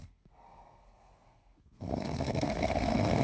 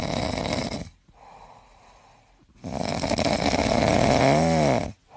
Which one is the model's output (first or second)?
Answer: first